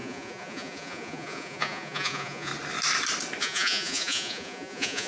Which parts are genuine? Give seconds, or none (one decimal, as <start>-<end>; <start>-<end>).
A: 2.5-3.4